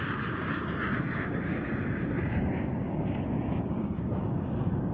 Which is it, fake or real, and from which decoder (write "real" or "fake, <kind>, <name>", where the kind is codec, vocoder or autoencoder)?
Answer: fake, codec, DAC